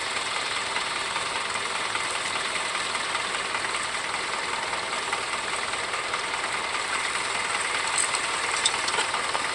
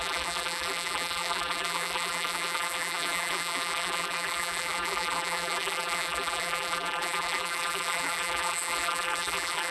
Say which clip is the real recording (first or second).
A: first